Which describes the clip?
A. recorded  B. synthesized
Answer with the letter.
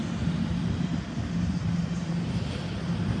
A